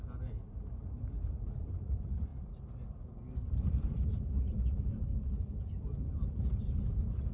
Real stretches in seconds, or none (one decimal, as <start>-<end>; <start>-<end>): 2.3-3.0; 5.1-5.7